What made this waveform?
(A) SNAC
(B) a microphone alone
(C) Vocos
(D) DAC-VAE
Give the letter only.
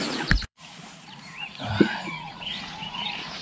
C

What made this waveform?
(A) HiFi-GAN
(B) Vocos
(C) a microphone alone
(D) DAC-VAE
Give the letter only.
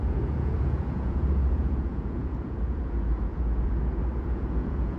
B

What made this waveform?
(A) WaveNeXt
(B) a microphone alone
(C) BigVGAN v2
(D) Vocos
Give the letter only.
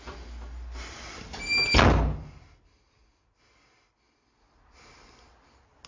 B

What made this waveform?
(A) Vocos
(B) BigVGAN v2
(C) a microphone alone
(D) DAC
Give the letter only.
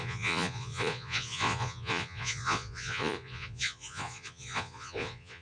A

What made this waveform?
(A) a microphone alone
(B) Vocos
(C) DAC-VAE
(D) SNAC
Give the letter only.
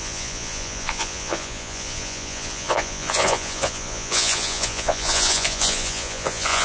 B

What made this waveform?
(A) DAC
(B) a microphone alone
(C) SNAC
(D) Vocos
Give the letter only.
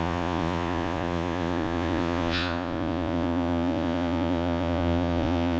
D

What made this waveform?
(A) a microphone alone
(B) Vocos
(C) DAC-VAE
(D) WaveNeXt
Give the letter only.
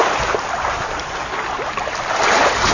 A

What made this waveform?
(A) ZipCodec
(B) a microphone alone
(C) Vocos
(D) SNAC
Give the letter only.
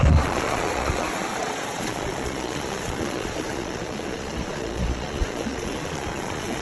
C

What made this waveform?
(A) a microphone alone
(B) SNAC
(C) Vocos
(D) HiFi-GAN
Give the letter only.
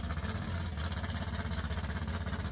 A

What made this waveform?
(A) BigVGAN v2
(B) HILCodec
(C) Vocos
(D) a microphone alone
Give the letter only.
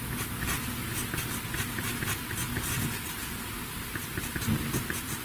D